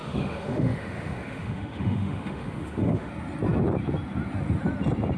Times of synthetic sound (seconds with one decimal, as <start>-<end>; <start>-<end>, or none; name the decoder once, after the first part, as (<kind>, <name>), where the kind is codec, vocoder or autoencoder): 0.0-3.1 (autoencoder, DAC-VAE)